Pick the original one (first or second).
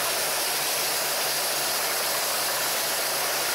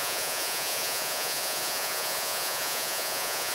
first